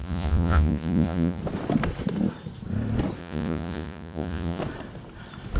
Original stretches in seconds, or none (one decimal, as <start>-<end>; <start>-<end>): 1.4-3.2; 4.6-5.6